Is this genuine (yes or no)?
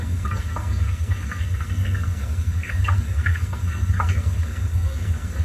no